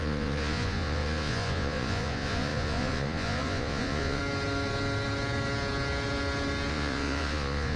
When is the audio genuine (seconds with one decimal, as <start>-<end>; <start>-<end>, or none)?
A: 4.2-6.7